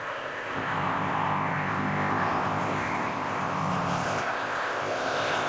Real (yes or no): no